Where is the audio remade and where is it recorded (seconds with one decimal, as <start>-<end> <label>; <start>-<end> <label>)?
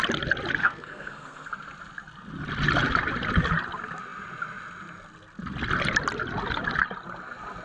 0.0-0.6 recorded; 0.6-1.5 remade; 1.5-7.6 recorded